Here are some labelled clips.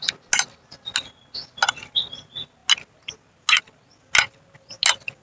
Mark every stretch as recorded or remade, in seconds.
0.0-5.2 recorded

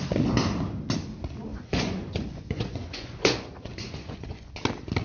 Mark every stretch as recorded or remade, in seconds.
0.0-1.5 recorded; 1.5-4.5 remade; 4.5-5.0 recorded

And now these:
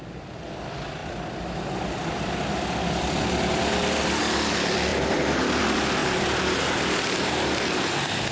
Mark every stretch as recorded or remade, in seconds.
0.0-4.9 recorded; 4.9-5.6 remade; 5.6-6.0 recorded; 6.0-6.6 remade; 6.6-8.3 recorded

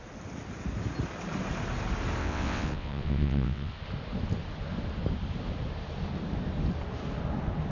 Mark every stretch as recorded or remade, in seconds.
0.0-2.2 recorded; 2.2-3.7 remade; 3.7-7.7 recorded

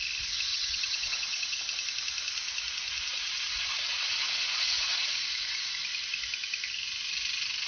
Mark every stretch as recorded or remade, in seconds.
0.0-0.5 recorded; 0.5-1.6 remade; 1.6-7.7 recorded